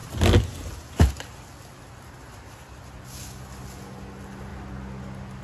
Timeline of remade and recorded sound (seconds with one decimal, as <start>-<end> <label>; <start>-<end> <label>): 0.0-5.4 recorded